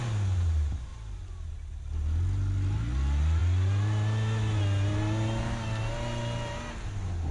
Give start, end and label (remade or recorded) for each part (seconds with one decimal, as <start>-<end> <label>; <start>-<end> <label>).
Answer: 0.0-7.3 recorded